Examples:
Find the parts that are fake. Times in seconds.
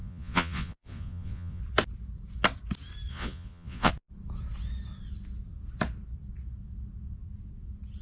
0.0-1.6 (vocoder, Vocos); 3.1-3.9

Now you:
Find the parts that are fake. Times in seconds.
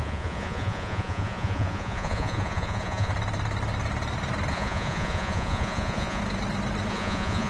0.0-3.1 (vocoder, Vocos); 4.5-6.2; 6.9-7.5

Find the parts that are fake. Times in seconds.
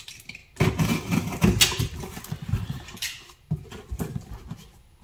none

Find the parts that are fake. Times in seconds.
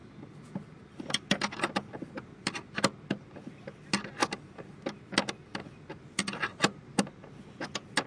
none